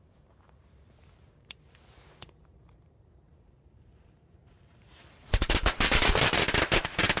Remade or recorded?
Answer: remade